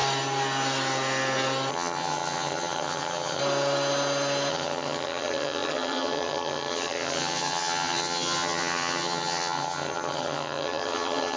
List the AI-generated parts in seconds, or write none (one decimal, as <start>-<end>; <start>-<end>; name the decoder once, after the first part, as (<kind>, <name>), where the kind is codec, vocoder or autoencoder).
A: 1.7-3.4 (vocoder, HiFi-GAN); 4.5-11.4